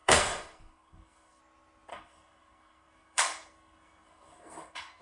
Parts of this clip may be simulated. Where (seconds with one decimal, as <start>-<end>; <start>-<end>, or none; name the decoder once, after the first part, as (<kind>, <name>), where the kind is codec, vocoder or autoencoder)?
0.0-1.4 (codec, SNAC); 1.9-5.0